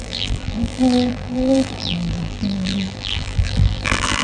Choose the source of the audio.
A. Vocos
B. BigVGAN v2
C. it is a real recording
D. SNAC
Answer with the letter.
B